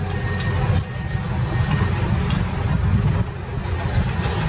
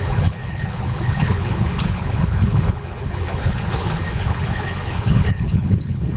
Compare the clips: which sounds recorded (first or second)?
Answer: first